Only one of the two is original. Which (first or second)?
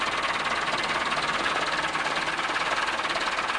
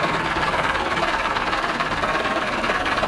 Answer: first